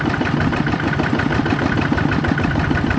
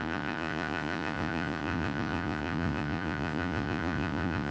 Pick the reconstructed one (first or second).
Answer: second